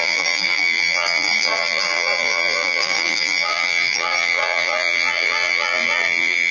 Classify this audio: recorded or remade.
remade